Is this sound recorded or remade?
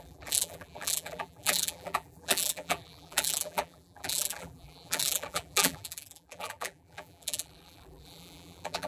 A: remade